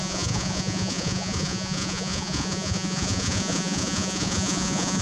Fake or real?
fake